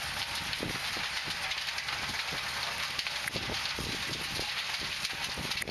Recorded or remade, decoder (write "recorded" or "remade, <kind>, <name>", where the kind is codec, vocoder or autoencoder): recorded